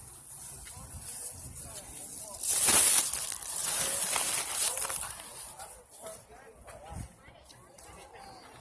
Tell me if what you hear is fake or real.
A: real